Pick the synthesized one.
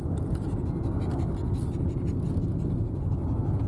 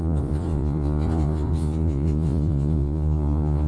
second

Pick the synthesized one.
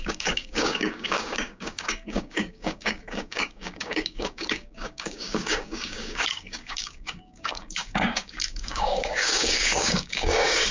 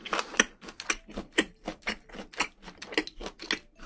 first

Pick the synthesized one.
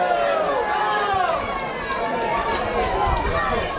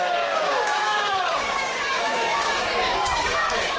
second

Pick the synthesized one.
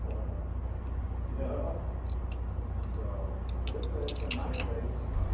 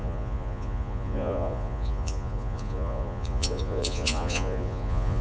second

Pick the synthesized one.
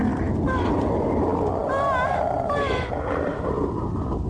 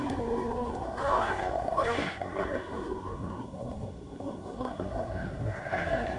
second